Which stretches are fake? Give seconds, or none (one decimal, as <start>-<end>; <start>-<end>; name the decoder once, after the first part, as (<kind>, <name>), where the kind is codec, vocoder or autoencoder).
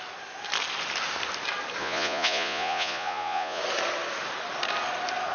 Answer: 1.8-3.6 (vocoder, Vocos)